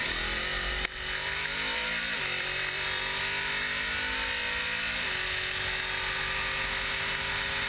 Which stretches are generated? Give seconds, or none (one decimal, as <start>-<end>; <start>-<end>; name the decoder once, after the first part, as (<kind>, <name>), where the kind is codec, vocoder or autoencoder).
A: 1.2-3.2 (vocoder, BigVGAN v2)